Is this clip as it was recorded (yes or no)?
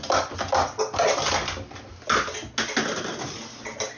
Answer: yes